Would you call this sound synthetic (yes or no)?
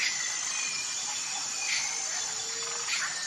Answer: no